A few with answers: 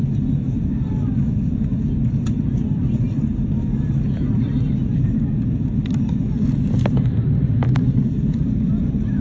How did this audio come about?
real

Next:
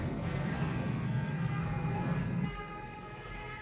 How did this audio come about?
fake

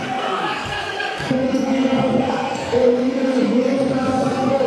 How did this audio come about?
fake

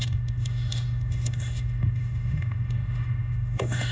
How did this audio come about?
fake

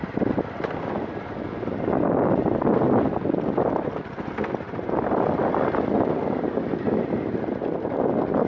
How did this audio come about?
real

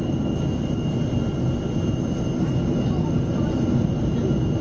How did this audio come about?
real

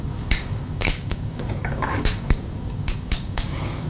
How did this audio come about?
fake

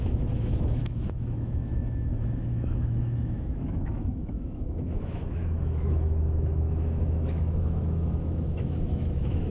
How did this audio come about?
fake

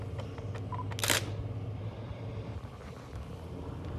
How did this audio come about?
real